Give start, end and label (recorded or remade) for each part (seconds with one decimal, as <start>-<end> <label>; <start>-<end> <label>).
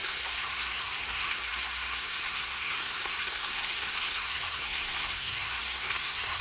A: 0.0-6.4 remade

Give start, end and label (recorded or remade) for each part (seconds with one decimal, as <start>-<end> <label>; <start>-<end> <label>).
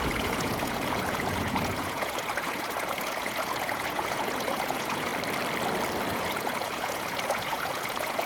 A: 0.0-5.1 remade; 5.1-6.1 recorded; 6.1-8.3 remade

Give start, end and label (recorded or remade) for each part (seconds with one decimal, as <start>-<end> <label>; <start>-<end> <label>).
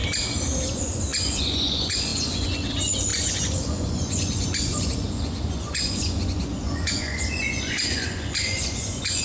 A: 0.0-0.7 recorded; 0.7-9.2 remade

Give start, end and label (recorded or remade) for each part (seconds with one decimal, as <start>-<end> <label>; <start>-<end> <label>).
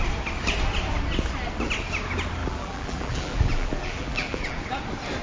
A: 0.0-2.4 recorded; 2.4-4.6 remade; 4.6-5.2 recorded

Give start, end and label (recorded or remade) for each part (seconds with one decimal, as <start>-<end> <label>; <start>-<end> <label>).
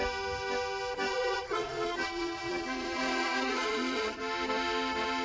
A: 0.0-1.1 recorded; 1.1-4.2 remade; 4.2-5.2 recorded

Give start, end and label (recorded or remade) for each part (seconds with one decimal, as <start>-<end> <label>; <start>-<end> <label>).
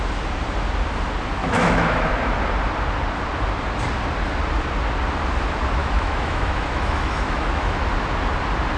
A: 0.0-1.4 recorded; 1.4-2.1 remade; 2.1-5.8 recorded; 5.8-7.8 remade; 7.8-8.8 recorded